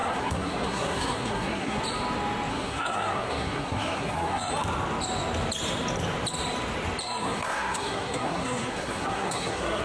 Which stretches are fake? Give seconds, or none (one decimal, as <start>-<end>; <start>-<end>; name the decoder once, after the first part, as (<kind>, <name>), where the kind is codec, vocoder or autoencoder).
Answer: 0.0-1.8 (codec, SNAC); 2.5-4.5; 7.0-9.8